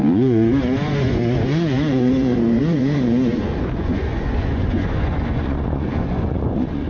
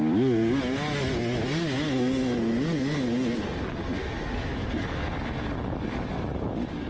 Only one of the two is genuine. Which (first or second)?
second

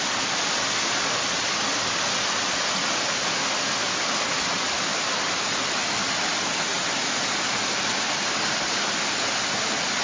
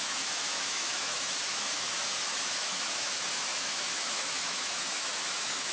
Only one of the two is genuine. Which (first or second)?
first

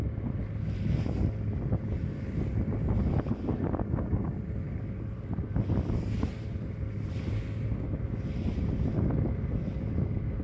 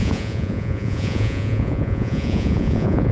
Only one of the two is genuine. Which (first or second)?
first